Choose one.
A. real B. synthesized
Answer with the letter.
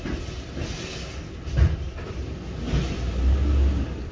A